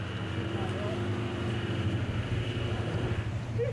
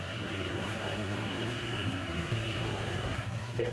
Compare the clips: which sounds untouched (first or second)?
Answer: first